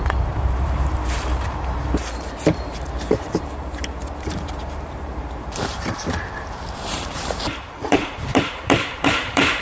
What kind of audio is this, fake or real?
fake